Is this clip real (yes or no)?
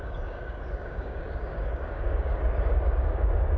no